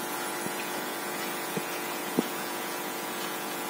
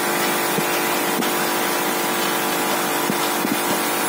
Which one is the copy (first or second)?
first